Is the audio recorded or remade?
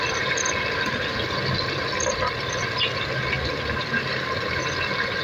recorded